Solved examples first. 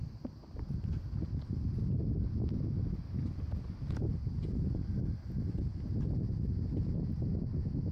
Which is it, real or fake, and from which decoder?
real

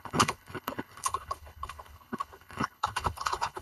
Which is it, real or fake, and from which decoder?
fake, codec, HILCodec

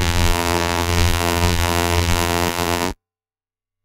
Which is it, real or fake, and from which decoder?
fake, vocoder, BigVGAN v2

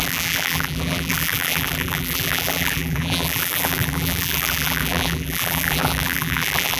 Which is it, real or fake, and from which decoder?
fake, vocoder, BigVGAN v2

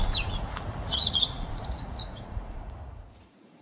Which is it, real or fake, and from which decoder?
fake, vocoder, Vocos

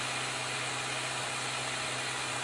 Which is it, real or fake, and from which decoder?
real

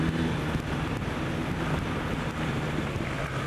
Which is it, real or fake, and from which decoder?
real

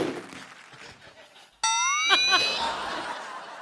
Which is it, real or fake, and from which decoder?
real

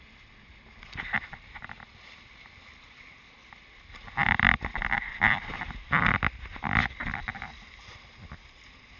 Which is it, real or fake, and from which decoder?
real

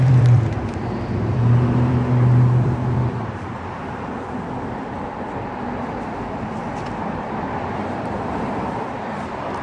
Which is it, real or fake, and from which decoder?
fake, vocoder, BigVGAN v2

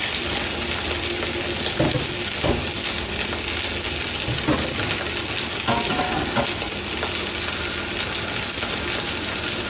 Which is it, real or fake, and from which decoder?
real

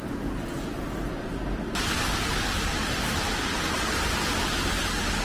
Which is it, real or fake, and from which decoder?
real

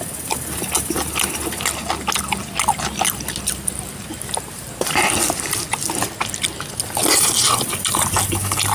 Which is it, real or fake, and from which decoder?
real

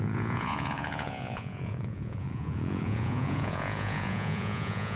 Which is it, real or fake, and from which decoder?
fake, vocoder, Vocos